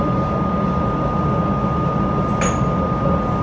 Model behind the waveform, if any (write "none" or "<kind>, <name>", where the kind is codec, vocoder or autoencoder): none